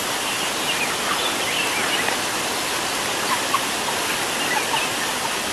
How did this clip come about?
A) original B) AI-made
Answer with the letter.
A